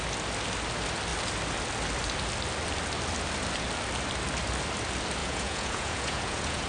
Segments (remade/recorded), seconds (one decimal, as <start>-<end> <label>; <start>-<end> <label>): 0.0-5.2 recorded; 5.2-6.7 remade

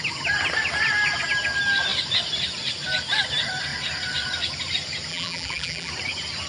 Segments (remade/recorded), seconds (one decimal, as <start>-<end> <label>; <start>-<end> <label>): 0.0-5.1 recorded; 5.1-5.9 remade; 5.9-6.5 recorded

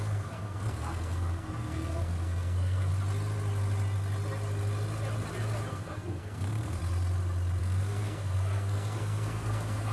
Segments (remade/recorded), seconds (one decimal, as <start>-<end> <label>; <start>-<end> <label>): 0.0-2.9 remade; 2.9-5.7 recorded; 5.7-6.8 remade; 6.8-7.6 recorded; 7.6-9.9 remade

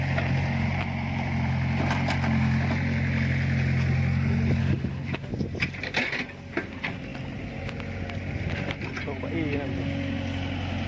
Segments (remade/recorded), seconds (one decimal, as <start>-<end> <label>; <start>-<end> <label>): 0.0-4.6 recorded; 4.6-5.3 remade; 5.3-10.9 recorded

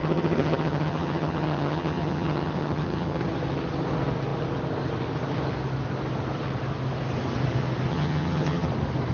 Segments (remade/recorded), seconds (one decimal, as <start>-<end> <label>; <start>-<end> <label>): 0.0-3.2 remade; 3.2-7.9 recorded; 7.9-8.7 remade; 8.7-9.1 recorded

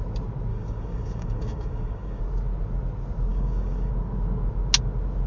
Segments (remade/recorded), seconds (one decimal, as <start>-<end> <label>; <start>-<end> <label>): 0.0-0.5 recorded; 0.5-2.2 remade; 2.2-3.3 recorded; 3.3-3.9 remade; 3.9-5.3 recorded

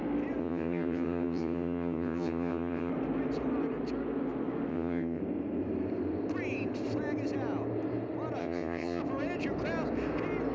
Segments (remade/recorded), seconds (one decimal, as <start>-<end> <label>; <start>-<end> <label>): 0.0-0.4 recorded; 0.4-2.9 remade; 2.9-4.7 recorded; 4.7-5.2 remade; 5.2-8.4 recorded; 8.4-9.0 remade; 9.0-10.5 recorded

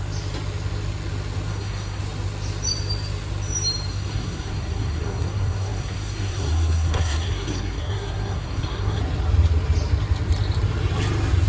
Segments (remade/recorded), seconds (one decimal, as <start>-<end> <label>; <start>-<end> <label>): 0.0-1.5 recorded; 1.5-2.0 remade; 2.0-3.9 recorded; 3.9-9.0 remade; 9.0-11.5 recorded